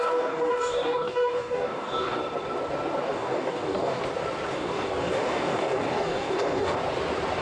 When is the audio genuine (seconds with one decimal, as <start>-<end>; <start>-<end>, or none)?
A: 2.2-3.0; 4.0-4.5; 6.8-7.4